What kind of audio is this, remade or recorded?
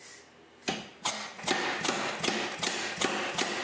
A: recorded